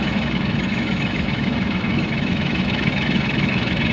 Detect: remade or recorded remade